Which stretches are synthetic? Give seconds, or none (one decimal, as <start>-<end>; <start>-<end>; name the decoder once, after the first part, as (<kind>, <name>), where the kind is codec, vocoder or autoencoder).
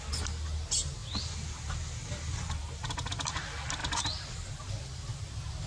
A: 1.0-2.9 (vocoder, BigVGAN v2); 3.8-5.2